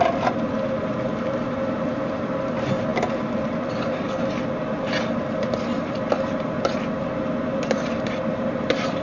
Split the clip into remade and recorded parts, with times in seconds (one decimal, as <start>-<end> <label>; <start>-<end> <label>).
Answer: 0.0-9.0 recorded